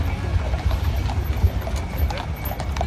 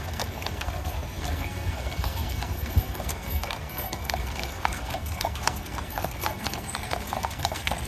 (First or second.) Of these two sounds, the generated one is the second